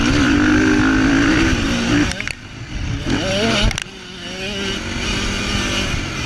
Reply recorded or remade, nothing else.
recorded